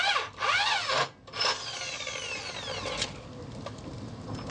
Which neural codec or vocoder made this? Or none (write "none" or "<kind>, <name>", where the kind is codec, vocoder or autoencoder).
none